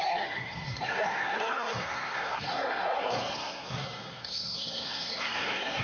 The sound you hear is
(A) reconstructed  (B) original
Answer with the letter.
A